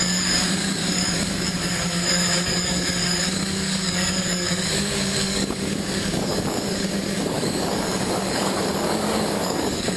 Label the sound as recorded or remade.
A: remade